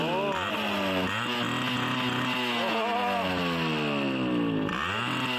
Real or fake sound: real